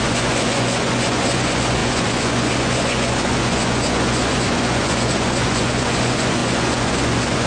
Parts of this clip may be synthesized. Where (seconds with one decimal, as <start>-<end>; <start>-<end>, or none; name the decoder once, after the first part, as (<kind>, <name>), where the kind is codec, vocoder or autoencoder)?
0.0-7.5 (vocoder, Vocos)